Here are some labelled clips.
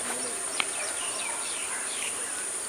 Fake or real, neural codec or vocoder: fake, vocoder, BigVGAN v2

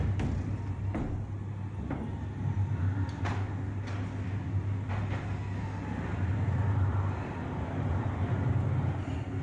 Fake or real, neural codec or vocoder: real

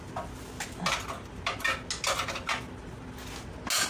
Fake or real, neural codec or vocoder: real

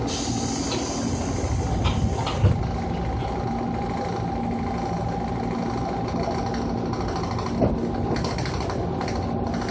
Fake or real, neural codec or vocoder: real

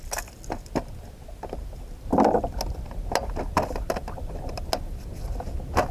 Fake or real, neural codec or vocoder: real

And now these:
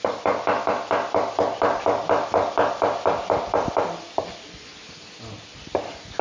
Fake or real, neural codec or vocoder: real